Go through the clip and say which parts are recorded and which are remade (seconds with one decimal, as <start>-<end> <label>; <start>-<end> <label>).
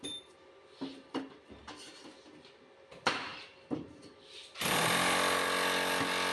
0.0-6.3 recorded